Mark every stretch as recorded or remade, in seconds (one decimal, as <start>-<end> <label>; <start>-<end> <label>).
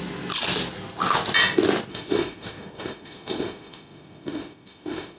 0.0-1.9 recorded; 1.9-5.2 remade